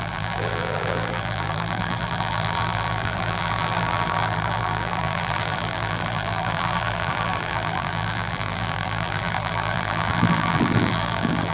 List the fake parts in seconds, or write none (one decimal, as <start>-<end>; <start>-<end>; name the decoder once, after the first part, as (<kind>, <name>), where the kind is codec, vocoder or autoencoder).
0.0-11.5 (vocoder, BigVGAN v2)